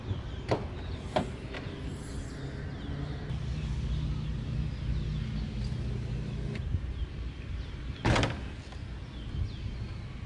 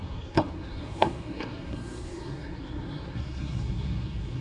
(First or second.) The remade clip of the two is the second